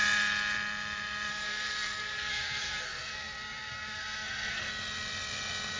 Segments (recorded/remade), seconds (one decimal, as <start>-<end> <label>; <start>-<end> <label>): 0.0-1.3 recorded; 1.3-4.7 remade; 4.7-5.8 recorded